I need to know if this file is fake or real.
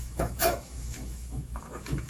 fake